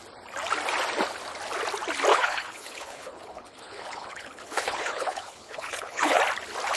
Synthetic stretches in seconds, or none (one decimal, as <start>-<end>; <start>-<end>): 2.1-6.2